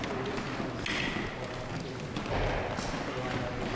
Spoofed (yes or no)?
no